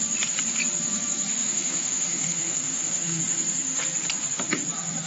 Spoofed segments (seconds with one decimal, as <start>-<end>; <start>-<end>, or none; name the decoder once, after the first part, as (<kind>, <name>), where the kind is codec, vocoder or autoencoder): 1.3-3.2 (autoencoder, DAC-VAE)